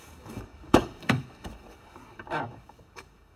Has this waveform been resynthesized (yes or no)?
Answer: yes